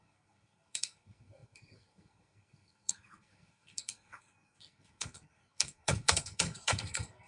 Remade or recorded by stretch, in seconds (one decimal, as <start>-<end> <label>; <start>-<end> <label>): 0.0-7.3 remade